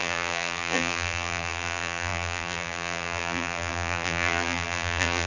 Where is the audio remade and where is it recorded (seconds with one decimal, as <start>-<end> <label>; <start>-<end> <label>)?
0.0-5.3 remade